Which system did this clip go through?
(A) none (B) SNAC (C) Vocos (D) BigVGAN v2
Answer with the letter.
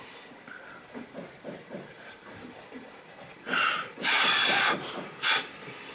D